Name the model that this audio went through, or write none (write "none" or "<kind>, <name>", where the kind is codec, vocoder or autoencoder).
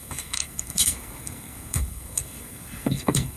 codec, SNAC